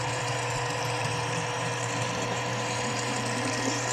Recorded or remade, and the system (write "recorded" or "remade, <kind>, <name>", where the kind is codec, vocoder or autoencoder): remade, vocoder, BigVGAN v2